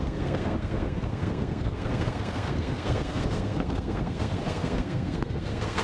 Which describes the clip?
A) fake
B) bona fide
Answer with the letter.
A